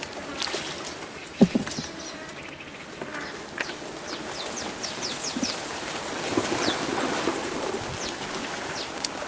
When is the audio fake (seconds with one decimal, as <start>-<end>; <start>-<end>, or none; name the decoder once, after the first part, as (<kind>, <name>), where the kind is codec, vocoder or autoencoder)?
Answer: none